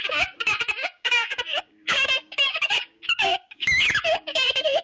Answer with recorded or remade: remade